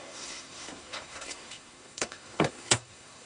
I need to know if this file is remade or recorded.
remade